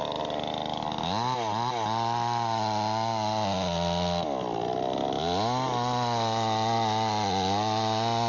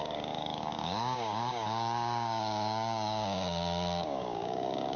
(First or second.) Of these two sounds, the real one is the first